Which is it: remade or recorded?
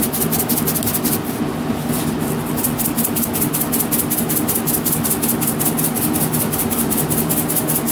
recorded